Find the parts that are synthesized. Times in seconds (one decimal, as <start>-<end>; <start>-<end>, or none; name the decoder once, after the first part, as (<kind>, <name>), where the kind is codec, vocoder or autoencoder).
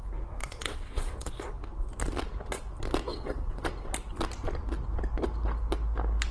0.4-1.3 (vocoder, WaveNeXt); 3.1-3.7